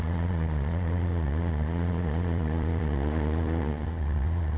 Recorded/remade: remade